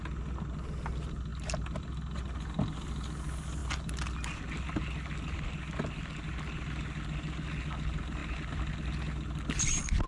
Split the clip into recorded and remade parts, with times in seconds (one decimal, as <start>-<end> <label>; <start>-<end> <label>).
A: 0.0-10.1 recorded